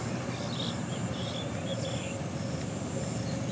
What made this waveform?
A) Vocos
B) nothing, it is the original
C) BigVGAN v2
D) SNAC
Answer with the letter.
B